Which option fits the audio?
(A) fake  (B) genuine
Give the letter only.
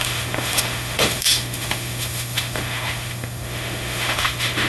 A